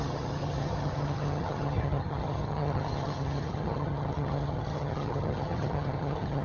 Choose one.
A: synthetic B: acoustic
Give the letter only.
A